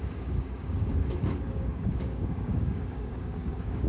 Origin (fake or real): fake